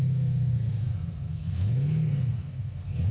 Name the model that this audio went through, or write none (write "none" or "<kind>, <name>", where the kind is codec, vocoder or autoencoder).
codec, SNAC